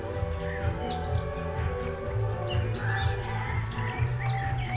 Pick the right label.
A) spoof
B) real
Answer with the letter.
B